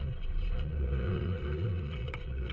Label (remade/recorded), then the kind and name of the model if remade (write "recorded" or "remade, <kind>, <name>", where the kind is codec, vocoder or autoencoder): remade, vocoder, Vocos